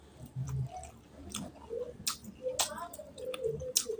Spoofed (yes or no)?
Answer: no